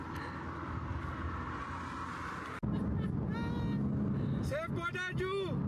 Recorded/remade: recorded